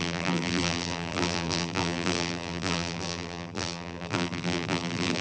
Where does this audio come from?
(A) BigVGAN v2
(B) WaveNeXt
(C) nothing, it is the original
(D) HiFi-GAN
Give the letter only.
A